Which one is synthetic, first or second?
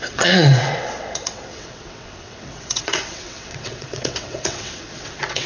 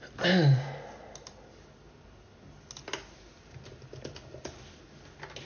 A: first